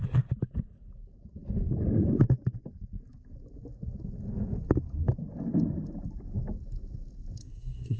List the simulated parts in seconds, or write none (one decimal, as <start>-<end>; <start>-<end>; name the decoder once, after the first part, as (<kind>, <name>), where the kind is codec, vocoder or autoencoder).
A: 7.4-8.0 (codec, SNAC)